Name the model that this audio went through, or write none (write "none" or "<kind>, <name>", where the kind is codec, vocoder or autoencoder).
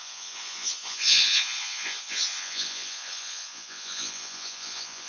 vocoder, Vocos